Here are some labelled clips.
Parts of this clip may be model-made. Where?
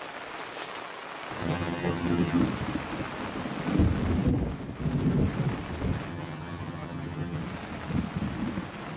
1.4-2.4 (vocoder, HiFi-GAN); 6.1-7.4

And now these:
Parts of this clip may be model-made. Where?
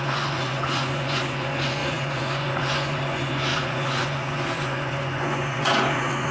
0.0-6.3 (vocoder, Vocos)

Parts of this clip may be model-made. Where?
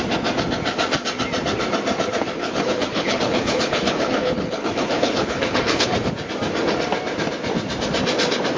2.4-6.1 (codec, HILCodec)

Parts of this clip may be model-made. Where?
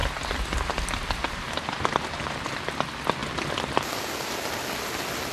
0.0-2.6 (vocoder, BigVGAN v2); 3.2-3.9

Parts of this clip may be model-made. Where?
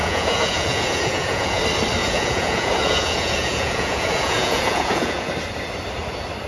0.0-1.6 (vocoder, Vocos); 2.0-5.3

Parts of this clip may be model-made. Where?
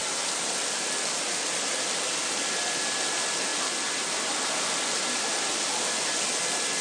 none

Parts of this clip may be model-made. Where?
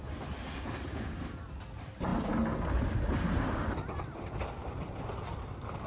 none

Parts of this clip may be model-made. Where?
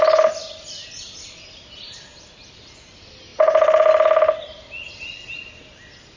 3.3-3.9 (vocoder, BigVGAN v2)